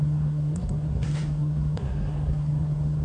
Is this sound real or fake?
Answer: fake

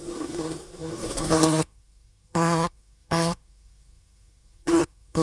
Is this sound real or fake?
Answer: fake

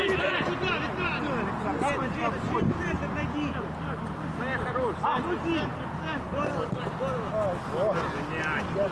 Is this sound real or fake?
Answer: real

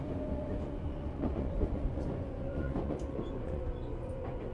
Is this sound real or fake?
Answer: fake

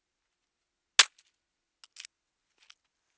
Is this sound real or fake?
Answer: real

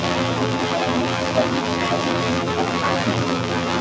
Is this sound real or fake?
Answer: fake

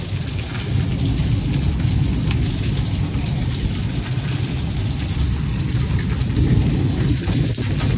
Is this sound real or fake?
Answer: real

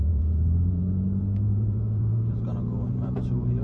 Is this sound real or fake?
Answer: fake